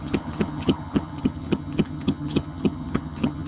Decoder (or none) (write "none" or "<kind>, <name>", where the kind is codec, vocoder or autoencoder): vocoder, HiFi-GAN